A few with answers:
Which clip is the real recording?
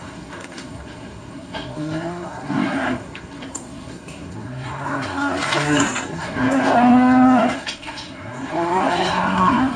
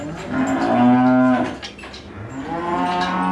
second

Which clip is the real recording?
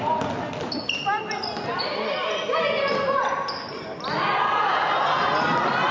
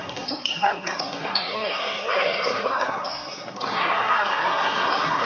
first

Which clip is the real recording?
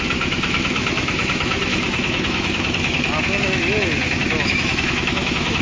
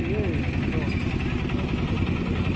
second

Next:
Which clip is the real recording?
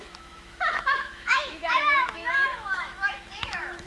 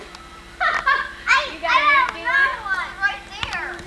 second